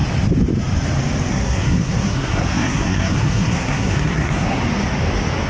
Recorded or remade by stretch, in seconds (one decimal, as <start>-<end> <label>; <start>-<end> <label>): 0.0-1.3 recorded; 1.3-4.6 remade; 4.6-5.5 recorded